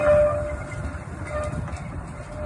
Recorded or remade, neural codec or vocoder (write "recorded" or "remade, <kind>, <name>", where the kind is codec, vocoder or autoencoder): recorded